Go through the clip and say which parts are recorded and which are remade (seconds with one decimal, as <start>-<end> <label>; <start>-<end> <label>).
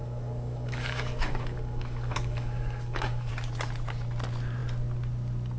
0.0-3.3 remade; 3.3-5.6 recorded